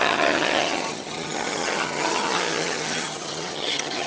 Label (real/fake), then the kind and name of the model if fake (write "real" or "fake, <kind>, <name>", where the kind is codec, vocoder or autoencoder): fake, vocoder, HiFi-GAN